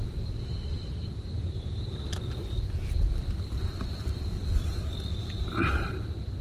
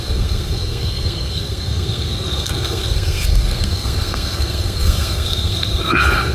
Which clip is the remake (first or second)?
second